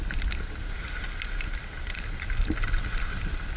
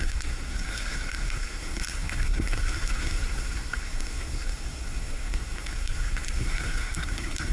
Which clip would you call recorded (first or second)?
first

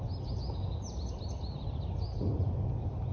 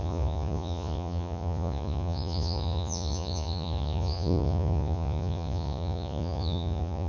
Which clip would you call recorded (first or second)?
first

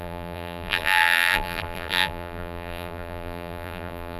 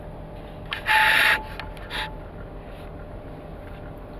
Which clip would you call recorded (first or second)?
second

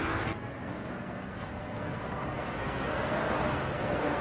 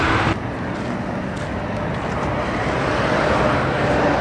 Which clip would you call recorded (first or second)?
second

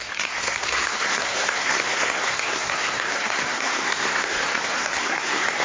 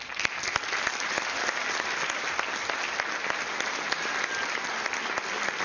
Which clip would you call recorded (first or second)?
second